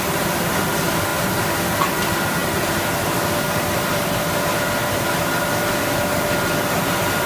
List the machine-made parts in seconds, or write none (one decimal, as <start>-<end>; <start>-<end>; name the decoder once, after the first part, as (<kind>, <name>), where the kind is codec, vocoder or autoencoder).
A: none